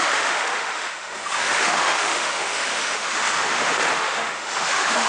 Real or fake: fake